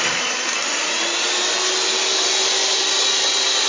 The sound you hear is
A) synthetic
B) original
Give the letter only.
B